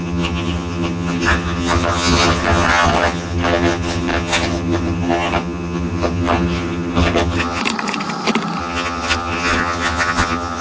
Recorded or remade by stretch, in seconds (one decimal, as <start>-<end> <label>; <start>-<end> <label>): 0.0-7.6 remade; 7.6-8.6 recorded; 8.6-10.6 remade